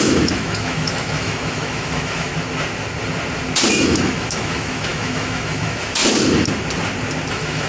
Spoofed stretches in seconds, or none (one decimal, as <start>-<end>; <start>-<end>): 0.0-2.3; 3.7-6.0; 7.3-7.7